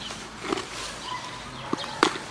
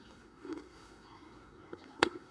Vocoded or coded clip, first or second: second